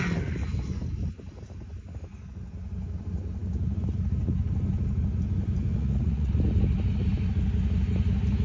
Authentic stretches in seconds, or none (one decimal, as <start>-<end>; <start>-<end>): 0.0-5.7; 6.3-8.4

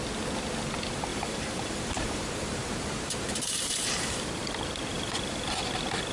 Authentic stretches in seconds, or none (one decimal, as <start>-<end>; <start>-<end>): 0.0-1.1; 4.3-4.9; 5.6-6.1

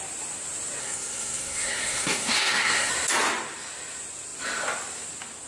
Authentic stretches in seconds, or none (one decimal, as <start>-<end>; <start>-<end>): 0.0-0.8; 2.9-5.5

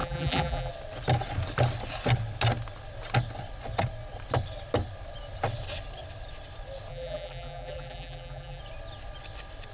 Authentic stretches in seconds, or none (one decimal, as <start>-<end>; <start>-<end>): 0.7-6.9; 8.6-9.7

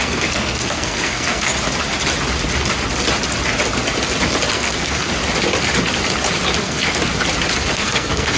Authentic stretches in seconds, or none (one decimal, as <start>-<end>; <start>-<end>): 1.5-4.5; 5.1-6.6; 7.1-7.7

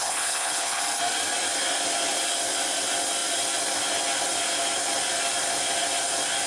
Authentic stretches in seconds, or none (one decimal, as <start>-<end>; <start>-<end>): 0.8-6.5